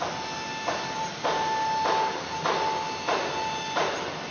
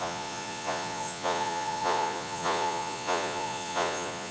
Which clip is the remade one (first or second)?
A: second